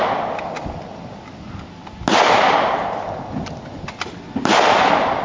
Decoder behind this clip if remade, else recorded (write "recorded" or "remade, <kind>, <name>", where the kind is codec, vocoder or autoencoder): recorded